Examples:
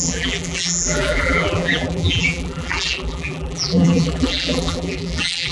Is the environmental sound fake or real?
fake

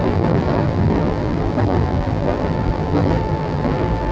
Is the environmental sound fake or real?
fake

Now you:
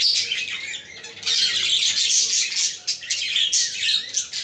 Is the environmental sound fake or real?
real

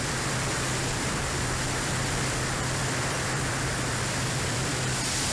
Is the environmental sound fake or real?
fake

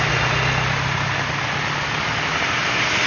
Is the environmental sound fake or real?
real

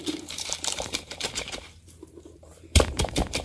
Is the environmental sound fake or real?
fake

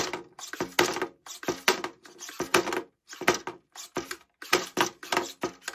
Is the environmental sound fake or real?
real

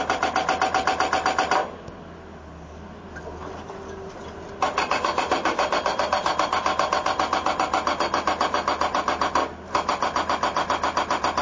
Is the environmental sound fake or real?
real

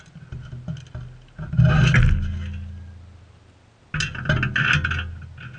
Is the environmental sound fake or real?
real